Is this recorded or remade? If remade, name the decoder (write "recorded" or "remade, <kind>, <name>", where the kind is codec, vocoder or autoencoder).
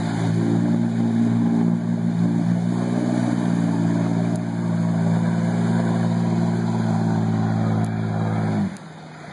recorded